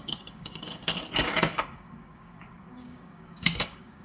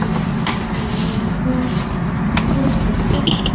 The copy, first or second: first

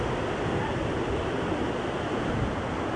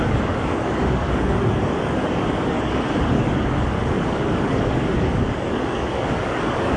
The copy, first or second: second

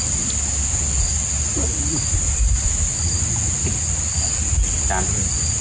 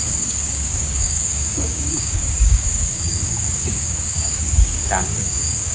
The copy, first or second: second